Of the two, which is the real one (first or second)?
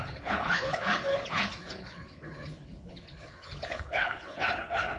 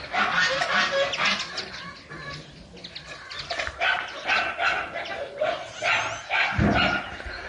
second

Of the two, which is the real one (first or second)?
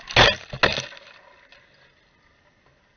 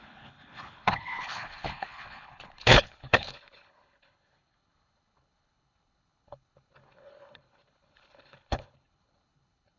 first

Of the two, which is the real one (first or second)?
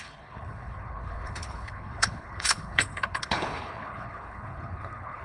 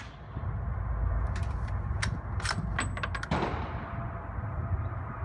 second